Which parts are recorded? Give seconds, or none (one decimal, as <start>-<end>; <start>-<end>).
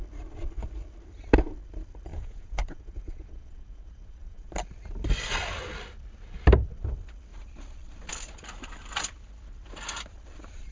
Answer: 0.0-2.1; 4.5-10.7